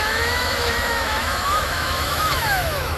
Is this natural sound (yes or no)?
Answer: no